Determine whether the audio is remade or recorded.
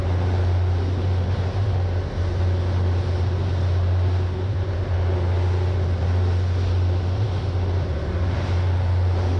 recorded